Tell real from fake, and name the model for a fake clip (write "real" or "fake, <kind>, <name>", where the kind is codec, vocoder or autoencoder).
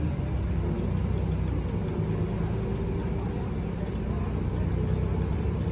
real